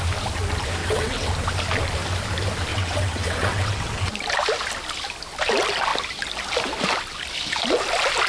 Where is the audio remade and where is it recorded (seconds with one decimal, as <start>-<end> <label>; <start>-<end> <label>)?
0.0-0.8 recorded; 0.8-1.3 remade; 1.3-2.7 recorded; 2.7-4.1 remade; 4.1-8.3 recorded